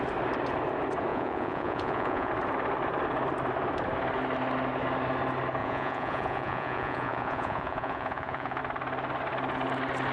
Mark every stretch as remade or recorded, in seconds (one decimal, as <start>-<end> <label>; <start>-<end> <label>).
0.0-1.1 recorded; 1.1-2.3 remade; 2.3-5.6 recorded; 5.6-8.6 remade; 8.6-10.1 recorded